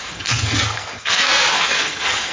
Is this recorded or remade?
remade